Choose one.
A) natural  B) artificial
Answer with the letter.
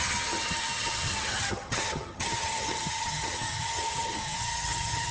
B